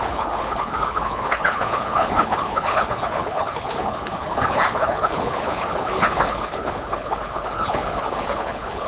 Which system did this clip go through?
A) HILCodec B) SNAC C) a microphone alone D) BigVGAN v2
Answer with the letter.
A